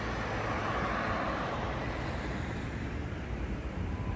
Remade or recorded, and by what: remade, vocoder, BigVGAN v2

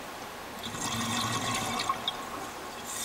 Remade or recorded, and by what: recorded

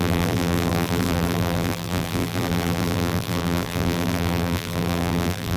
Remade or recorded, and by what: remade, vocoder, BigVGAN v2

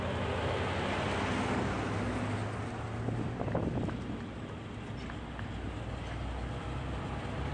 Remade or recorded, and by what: recorded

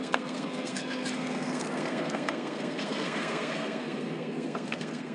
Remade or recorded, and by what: remade, codec, SNAC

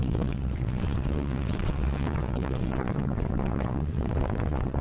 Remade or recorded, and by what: remade, vocoder, WaveNeXt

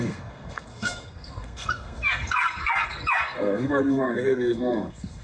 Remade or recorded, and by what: remade, codec, SNAC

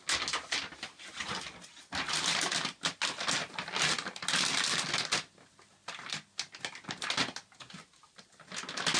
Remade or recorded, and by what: recorded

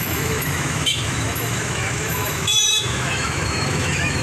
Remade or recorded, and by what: remade, autoencoder, DAC-VAE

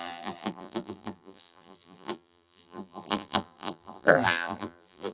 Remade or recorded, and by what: remade, vocoder, BigVGAN v2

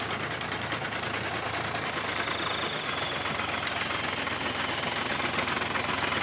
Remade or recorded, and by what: recorded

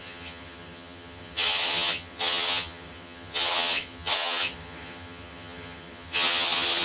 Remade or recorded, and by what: remade, vocoder, HiFi-GAN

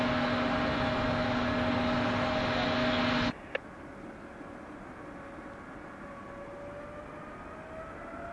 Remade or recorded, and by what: recorded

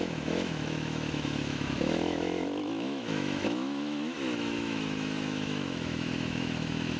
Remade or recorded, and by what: remade, autoencoder, DAC-VAE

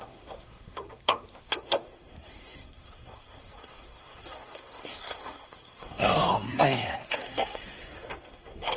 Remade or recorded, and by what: remade, codec, SNAC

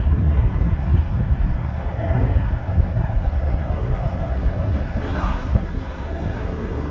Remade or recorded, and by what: remade, codec, SNAC